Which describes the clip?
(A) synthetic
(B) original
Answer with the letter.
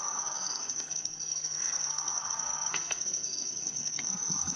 A